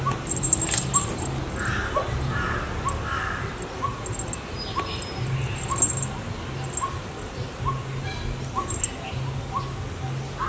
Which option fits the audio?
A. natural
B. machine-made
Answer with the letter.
A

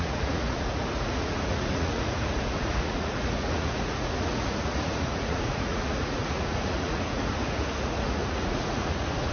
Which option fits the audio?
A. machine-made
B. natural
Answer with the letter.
A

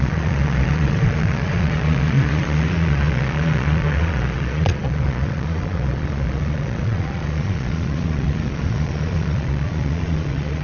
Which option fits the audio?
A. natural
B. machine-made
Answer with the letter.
B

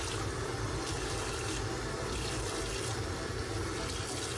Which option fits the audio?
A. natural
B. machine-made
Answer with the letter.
A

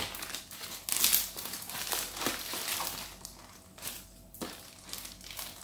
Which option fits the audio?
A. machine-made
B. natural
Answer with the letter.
B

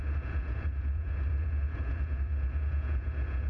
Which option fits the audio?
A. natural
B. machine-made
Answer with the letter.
B